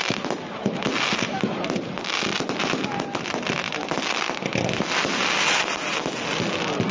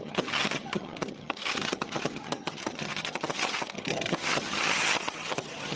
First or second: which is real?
first